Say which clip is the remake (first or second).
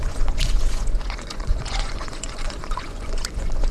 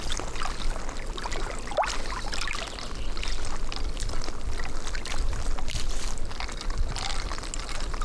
first